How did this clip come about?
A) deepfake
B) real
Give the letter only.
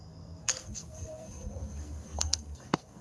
A